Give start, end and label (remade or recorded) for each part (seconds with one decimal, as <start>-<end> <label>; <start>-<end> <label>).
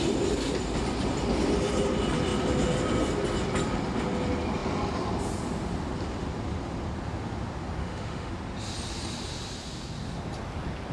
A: 0.0-7.8 recorded; 7.8-8.3 remade; 8.3-10.9 recorded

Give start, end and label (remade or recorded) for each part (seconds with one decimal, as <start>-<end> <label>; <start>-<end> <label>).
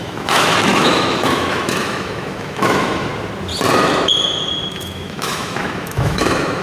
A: 0.0-3.1 remade; 3.1-4.7 recorded; 4.7-6.6 remade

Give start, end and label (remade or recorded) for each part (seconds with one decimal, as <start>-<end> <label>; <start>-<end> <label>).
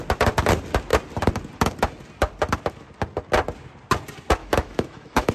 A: 0.0-4.4 recorded; 4.4-5.3 remade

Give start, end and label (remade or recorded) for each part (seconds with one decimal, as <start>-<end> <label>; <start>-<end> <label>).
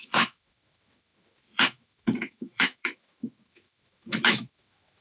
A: 0.0-5.0 remade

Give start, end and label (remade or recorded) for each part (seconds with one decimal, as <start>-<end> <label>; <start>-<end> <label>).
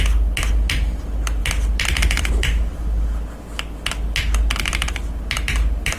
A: 0.0-6.0 recorded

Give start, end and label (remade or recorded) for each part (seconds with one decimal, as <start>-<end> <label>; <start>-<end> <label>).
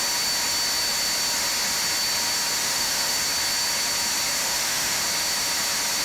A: 0.0-2.6 recorded; 2.6-3.2 remade; 3.2-4.4 recorded; 4.4-5.0 remade; 5.0-6.0 recorded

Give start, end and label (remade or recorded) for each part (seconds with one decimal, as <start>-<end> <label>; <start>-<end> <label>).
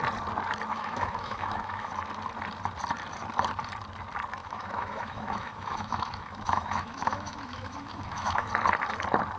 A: 0.0-0.7 recorded; 0.7-1.9 remade; 1.9-4.4 recorded; 4.4-8.5 remade; 8.5-9.4 recorded